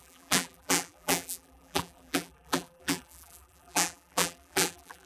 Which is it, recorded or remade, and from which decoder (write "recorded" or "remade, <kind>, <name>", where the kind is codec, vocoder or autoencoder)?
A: remade, vocoder, BigVGAN v2